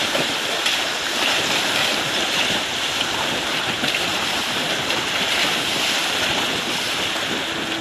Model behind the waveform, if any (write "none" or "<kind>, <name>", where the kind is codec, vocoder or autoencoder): vocoder, BigVGAN v2